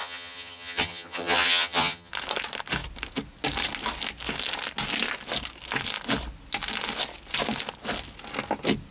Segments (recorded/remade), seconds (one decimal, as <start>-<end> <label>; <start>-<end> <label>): 0.0-2.1 remade; 2.1-8.9 recorded